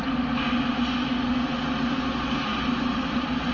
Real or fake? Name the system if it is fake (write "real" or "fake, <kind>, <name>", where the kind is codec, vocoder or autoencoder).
real